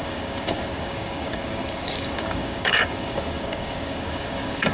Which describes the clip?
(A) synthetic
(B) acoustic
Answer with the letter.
A